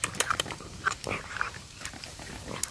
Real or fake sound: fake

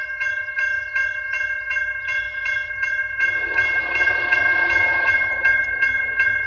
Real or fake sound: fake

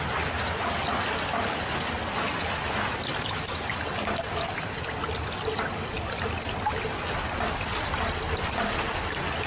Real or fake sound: real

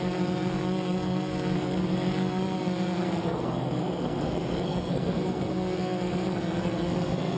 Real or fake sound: fake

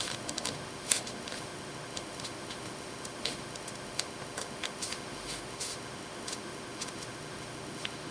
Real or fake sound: fake